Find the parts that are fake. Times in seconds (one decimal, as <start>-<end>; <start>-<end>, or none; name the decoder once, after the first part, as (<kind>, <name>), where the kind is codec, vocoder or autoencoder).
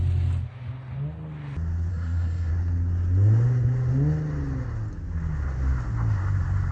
1.9-2.5 (codec, SNAC)